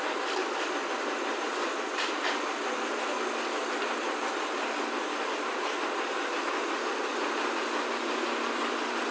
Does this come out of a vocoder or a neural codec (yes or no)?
no